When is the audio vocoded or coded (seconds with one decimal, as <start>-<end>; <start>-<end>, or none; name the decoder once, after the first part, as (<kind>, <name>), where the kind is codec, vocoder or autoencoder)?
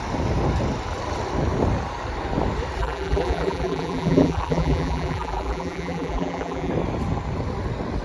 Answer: 2.8-6.7 (vocoder, BigVGAN v2)